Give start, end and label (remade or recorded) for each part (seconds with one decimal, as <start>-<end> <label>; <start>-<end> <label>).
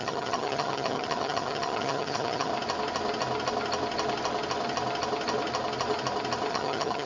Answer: 0.0-2.5 remade; 2.5-6.5 recorded; 6.5-7.1 remade